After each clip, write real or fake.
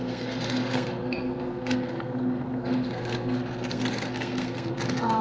fake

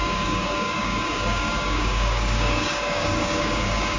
fake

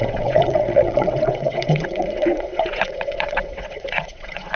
fake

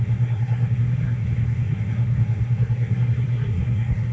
fake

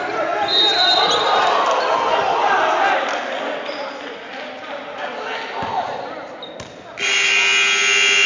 real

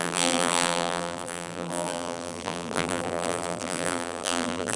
fake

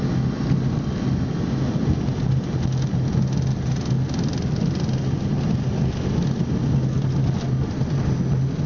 real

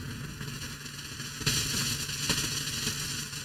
real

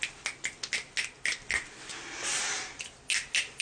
real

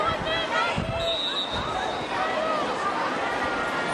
real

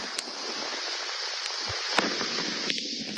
real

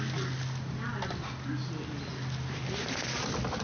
real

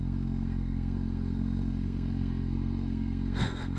fake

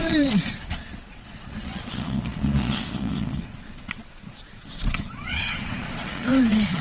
fake